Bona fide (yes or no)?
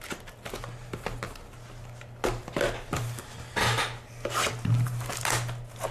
yes